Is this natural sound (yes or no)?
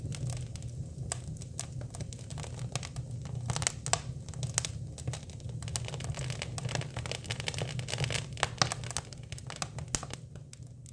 yes